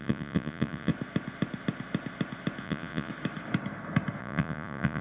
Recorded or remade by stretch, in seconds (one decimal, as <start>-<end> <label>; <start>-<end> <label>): 0.0-0.9 remade; 0.9-2.6 recorded; 2.6-3.1 remade; 3.1-4.2 recorded; 4.2-5.0 remade

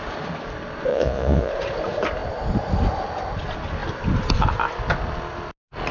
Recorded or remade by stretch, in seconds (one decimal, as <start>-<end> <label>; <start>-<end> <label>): 0.0-0.9 recorded; 0.9-1.5 remade; 1.5-5.9 recorded

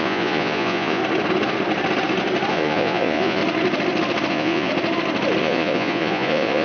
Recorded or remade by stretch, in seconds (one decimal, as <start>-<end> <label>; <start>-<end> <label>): 0.0-1.0 remade; 1.0-2.5 recorded; 2.5-3.4 remade; 3.4-4.3 recorded; 4.3-4.7 remade; 4.7-5.4 recorded; 5.4-6.6 remade

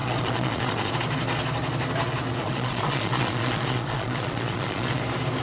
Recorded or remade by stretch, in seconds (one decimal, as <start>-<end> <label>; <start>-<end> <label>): 0.0-0.9 remade; 0.9-2.4 recorded; 2.4-5.0 remade; 5.0-5.4 recorded

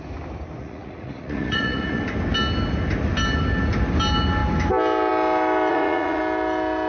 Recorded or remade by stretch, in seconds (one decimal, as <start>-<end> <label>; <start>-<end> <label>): 0.0-0.6 recorded; 0.6-2.0 remade; 2.0-5.7 recorded; 5.7-6.2 remade; 6.2-6.9 recorded

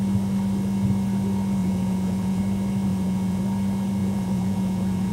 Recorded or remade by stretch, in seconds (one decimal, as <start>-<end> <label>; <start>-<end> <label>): 0.0-1.6 recorded; 1.6-2.4 remade; 2.4-2.9 recorded; 2.9-3.4 remade; 3.4-4.0 recorded; 4.0-5.1 remade

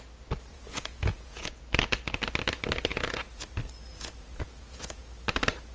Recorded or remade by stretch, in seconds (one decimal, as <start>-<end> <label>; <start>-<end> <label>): 0.0-0.5 recorded; 0.5-1.6 remade; 1.6-2.9 recorded; 2.9-3.5 remade; 3.5-3.9 recorded; 3.9-5.0 remade; 5.0-5.7 recorded

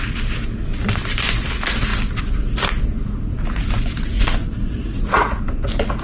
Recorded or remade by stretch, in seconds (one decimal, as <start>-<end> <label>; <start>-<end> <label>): 0.0-4.4 recorded; 4.4-5.4 remade; 5.4-6.0 recorded